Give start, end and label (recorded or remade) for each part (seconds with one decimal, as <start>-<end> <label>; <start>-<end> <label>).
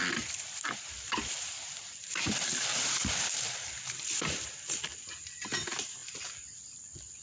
0.0-7.2 remade